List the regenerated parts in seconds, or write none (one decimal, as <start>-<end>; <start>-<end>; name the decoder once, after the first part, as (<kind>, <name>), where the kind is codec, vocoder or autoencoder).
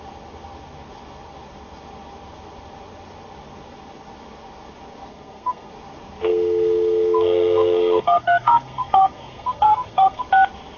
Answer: 5.1-5.7 (codec, SNAC); 6.3-10.2